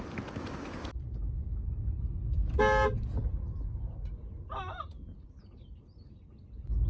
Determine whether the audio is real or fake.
real